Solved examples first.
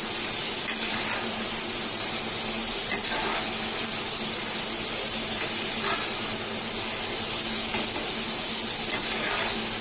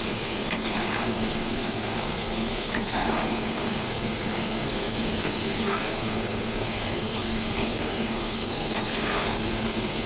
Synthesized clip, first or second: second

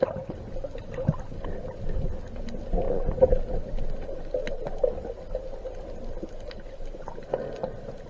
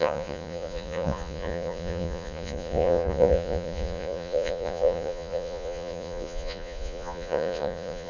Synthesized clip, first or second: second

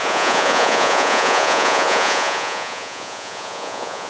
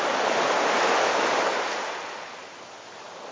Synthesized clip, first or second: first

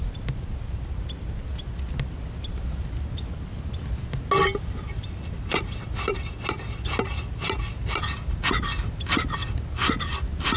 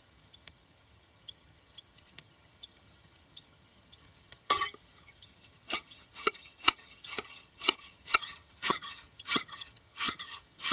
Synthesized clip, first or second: second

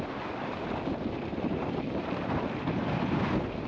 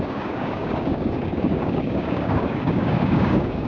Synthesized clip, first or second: second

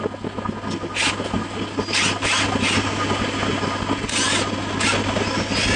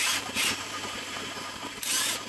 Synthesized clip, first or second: second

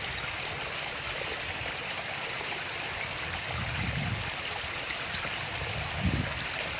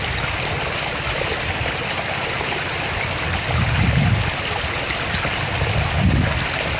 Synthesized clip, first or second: first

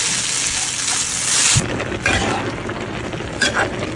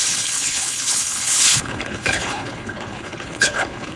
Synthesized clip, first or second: second